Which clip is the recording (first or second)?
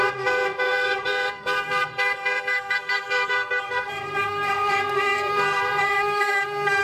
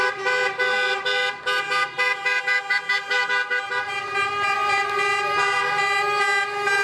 second